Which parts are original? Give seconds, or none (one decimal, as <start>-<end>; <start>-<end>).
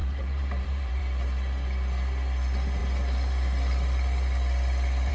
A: 1.0-5.1